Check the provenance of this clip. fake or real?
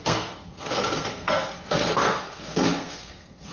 fake